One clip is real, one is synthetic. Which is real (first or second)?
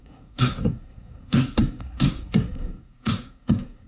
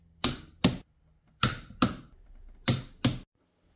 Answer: second